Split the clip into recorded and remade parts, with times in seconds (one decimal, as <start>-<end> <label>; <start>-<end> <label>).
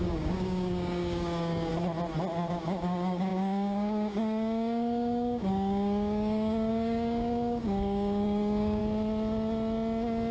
0.0-1.7 remade; 1.7-2.5 recorded; 2.5-8.8 remade; 8.8-10.3 recorded